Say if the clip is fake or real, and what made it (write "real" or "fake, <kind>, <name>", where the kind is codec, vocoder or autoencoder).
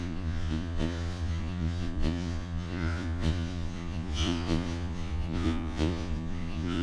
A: fake, vocoder, Vocos